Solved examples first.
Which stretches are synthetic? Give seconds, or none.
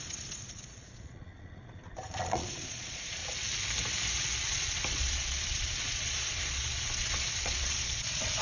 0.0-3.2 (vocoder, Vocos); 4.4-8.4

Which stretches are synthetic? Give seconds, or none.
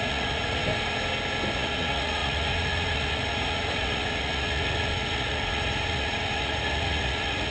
0.0-0.6 (vocoder, Vocos); 1.5-7.5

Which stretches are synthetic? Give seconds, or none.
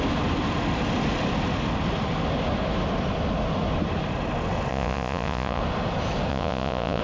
4.7-5.6 (vocoder, Vocos); 6.3-7.0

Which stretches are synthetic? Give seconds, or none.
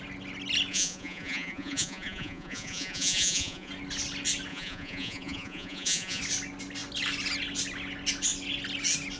0.7-3.7 (vocoder, Vocos); 4.5-6.2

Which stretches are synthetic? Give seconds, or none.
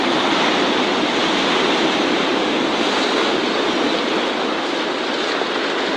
none